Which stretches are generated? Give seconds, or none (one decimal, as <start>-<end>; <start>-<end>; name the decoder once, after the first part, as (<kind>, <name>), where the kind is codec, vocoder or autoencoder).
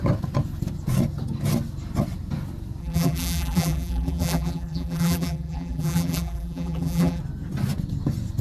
2.8-7.2 (vocoder, BigVGAN v2)